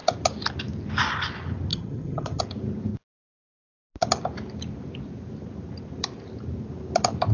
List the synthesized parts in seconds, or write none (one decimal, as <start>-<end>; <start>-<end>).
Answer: 1.7-2.4